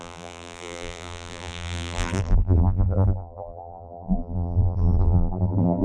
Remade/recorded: remade